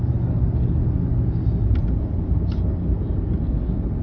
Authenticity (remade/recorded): recorded